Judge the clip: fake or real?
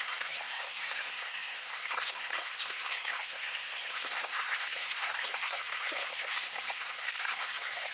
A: fake